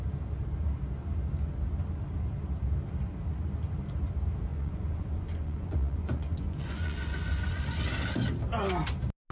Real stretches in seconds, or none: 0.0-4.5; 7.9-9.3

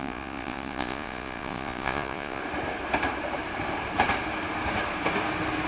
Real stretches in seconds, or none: 2.4-5.7

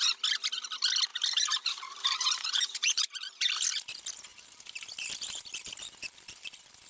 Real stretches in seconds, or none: 0.0-1.1; 3.5-4.3; 5.7-6.9

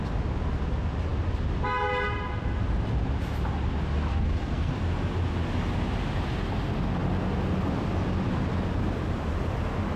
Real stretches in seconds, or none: 0.0-4.1; 4.7-10.0

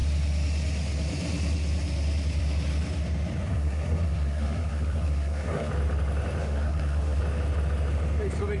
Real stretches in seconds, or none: 0.0-3.5; 5.7-6.4; 7.2-8.6

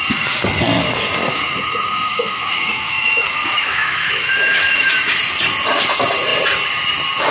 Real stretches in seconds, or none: 0.0-1.3; 4.9-7.3

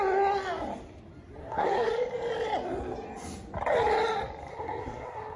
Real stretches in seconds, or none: 0.0-1.4; 1.9-4.5